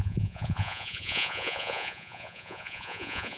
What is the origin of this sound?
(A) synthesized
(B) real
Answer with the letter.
A